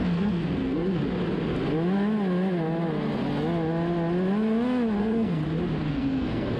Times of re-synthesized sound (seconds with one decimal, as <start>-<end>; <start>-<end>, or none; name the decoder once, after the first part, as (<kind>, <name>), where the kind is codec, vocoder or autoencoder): 0.0-1.0 (codec, SNAC); 5.0-5.4; 5.9-6.6